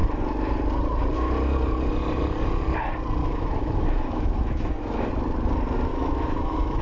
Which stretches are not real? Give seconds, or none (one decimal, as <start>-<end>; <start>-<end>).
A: 3.2-5.1; 5.9-6.8